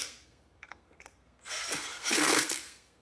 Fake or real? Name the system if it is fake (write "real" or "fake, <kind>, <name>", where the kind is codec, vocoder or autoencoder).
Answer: fake, codec, SNAC